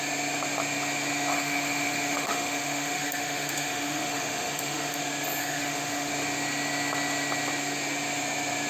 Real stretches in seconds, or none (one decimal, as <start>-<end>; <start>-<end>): 0.0-1.3; 5.0-5.4; 6.1-8.7